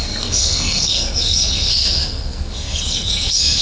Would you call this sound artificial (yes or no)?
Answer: yes